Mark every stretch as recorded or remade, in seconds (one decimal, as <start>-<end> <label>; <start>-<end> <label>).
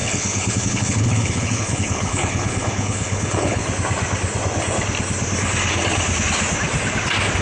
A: 0.0-3.6 remade; 3.6-7.4 recorded